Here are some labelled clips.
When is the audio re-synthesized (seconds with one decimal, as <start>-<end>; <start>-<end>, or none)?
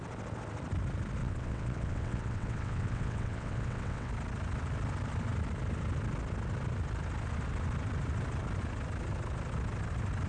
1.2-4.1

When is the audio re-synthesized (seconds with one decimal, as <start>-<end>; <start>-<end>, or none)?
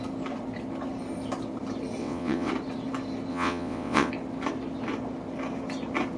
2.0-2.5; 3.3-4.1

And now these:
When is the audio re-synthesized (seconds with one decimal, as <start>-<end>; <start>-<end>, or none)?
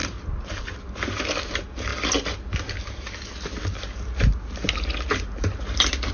none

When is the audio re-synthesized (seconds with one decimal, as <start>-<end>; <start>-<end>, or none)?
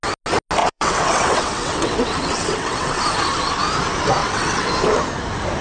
0.6-3.0; 4.2-4.7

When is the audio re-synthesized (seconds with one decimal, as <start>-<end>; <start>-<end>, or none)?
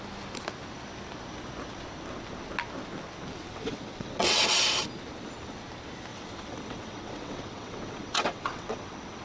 3.5-4.4; 6.1-9.2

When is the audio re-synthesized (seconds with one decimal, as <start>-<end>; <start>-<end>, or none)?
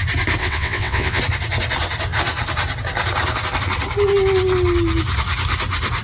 0.4-1.2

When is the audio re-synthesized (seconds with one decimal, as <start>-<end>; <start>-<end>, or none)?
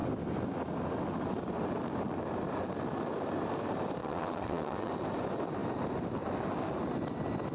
4.0-4.9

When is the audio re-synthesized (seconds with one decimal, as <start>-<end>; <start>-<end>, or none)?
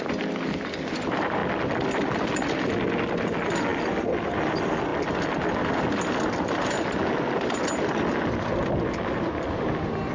none